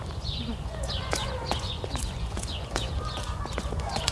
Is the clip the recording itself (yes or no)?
no